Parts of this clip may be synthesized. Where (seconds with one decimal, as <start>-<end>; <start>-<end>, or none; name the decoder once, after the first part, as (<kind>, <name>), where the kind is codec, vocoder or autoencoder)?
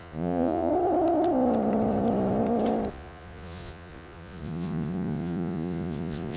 0.0-0.7 (vocoder, Vocos); 2.9-6.4